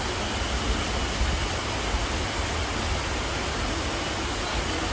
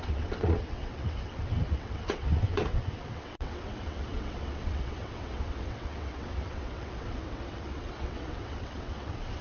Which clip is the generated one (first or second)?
second